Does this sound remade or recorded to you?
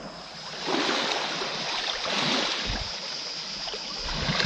recorded